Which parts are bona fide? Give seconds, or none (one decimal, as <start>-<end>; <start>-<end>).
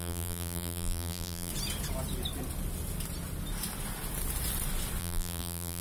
1.5-5.0